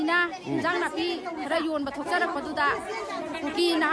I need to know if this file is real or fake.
real